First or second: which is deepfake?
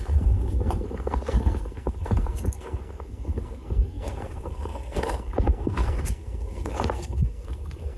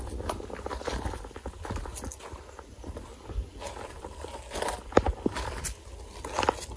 first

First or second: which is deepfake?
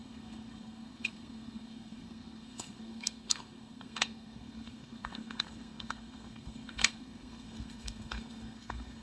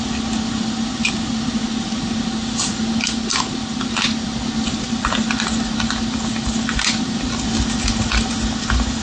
first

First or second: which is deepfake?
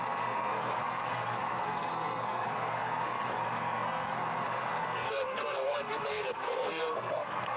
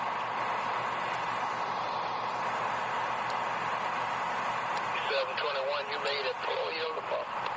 first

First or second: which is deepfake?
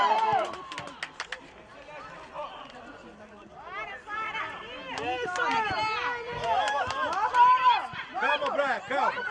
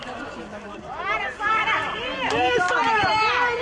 second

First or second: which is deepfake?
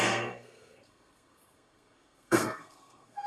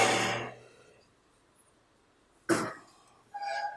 first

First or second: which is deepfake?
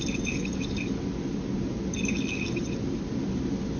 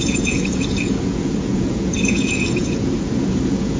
second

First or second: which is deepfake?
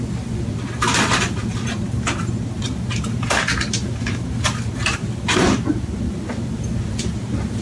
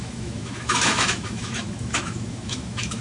second